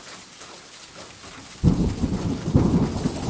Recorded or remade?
recorded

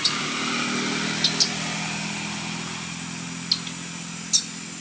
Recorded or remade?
recorded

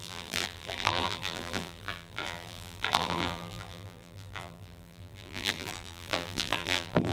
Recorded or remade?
remade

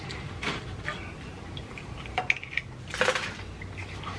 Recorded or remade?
recorded